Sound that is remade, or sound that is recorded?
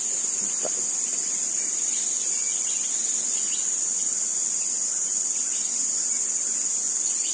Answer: recorded